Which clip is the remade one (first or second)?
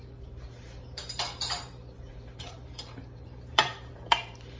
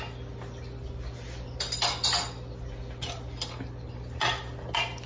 first